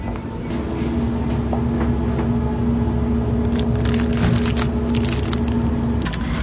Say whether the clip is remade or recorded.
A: recorded